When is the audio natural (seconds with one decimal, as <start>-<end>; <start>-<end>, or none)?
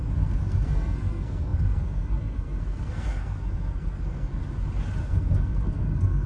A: 4.4-5.0